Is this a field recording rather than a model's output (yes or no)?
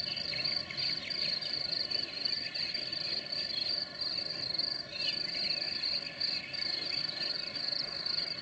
yes